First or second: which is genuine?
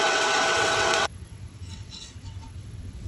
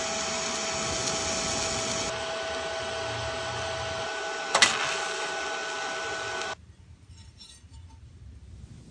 second